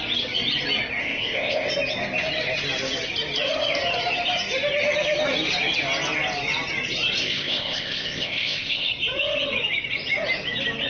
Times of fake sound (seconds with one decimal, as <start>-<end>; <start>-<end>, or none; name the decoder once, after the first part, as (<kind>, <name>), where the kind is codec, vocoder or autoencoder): 1.0-1.7 (codec, ZipCodec); 7.2-8.9